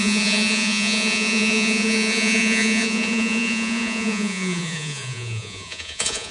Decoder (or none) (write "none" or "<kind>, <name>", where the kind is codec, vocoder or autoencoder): vocoder, Vocos